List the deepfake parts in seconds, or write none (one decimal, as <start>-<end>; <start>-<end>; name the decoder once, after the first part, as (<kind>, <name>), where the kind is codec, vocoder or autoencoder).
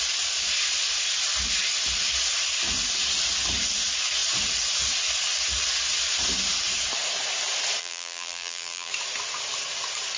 7.8-8.9 (vocoder, BigVGAN v2)